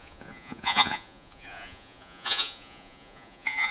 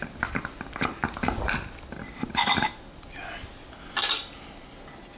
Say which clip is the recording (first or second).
second